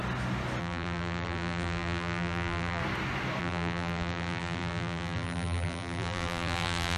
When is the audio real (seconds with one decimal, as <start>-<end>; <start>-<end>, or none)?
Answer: 0.0-0.6; 2.8-3.4